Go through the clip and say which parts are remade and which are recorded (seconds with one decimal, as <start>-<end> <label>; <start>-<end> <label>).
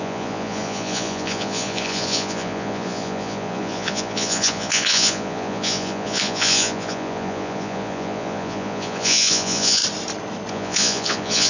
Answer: 0.0-9.8 remade; 9.8-10.5 recorded; 10.5-11.5 remade